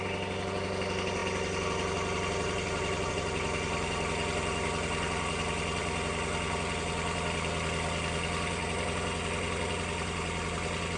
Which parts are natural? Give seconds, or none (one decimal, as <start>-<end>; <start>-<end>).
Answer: 0.0-11.0